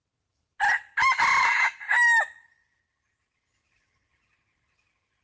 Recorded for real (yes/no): yes